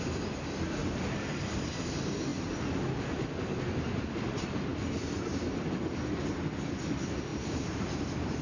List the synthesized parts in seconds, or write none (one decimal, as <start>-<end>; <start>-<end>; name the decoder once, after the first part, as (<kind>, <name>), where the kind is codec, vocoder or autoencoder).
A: 0.8-1.4 (vocoder, BigVGAN v2); 7.3-8.4